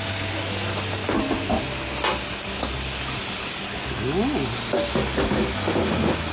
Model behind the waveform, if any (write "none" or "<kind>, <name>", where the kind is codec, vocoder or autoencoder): none